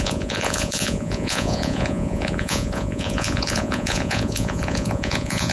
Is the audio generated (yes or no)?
yes